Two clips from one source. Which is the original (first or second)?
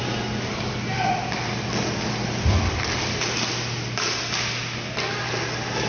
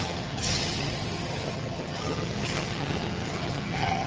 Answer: first